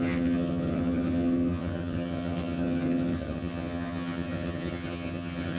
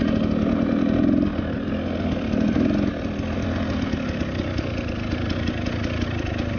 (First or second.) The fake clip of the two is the first